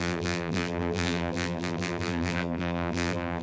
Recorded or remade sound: remade